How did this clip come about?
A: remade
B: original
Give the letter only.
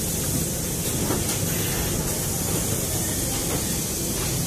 B